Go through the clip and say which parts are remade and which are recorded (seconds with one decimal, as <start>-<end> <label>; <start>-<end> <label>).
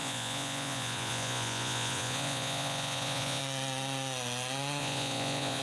0.0-3.4 remade; 3.4-4.8 recorded; 4.8-5.6 remade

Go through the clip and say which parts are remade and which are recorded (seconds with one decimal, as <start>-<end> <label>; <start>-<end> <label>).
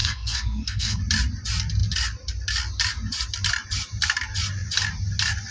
0.0-1.0 remade; 1.0-5.5 recorded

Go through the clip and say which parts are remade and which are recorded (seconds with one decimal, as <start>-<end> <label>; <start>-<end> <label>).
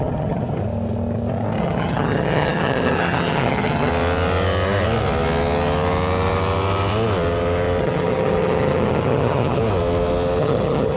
0.0-0.6 remade; 0.6-1.6 recorded; 1.6-3.9 remade; 3.9-7.8 recorded; 7.8-9.6 remade; 9.6-10.4 recorded; 10.4-11.0 remade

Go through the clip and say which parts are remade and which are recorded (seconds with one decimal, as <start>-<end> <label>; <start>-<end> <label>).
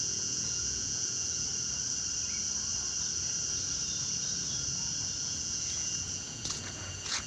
0.0-1.5 remade; 1.5-5.2 recorded; 5.2-7.3 remade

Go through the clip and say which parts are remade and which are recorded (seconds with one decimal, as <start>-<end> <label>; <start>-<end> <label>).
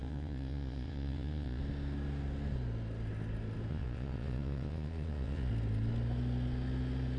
0.0-1.6 remade; 1.6-3.7 recorded; 3.7-5.5 remade; 5.5-7.2 recorded